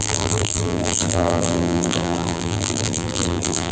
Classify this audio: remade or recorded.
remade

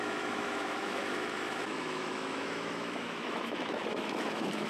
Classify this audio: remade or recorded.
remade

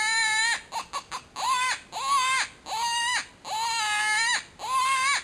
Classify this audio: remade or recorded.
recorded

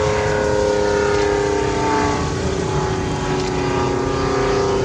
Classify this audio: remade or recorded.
recorded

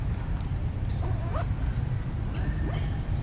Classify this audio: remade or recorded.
recorded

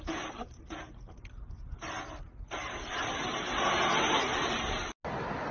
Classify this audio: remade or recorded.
recorded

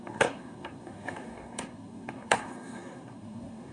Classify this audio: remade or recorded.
remade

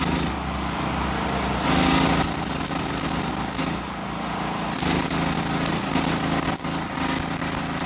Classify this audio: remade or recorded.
recorded